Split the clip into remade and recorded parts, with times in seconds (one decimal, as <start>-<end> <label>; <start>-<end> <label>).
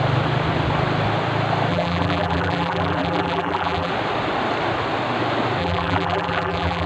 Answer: 0.0-1.7 recorded; 1.7-3.9 remade; 3.9-5.6 recorded; 5.6-6.9 remade